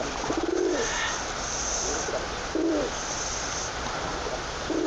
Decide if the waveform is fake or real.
real